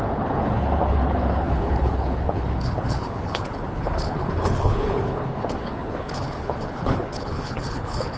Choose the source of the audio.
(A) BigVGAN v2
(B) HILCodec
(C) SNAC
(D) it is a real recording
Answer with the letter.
B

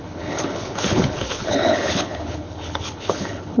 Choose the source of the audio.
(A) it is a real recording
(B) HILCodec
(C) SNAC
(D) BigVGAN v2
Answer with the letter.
B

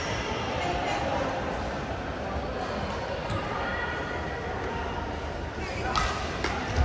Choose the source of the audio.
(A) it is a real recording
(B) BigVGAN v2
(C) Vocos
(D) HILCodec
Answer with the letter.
A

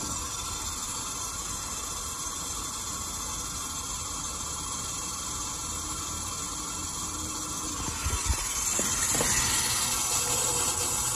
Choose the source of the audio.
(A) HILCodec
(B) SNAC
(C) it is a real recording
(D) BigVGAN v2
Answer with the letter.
C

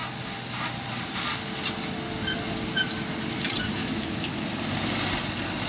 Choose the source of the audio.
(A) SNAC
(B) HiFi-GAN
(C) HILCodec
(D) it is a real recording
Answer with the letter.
D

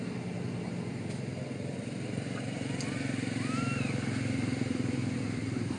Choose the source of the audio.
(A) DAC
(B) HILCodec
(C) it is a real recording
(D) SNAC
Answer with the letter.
C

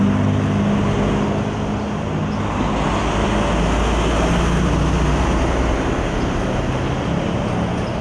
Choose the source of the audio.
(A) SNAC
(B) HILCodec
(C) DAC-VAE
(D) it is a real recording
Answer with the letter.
D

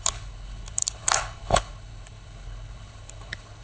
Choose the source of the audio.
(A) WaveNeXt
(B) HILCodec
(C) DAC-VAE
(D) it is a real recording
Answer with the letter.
B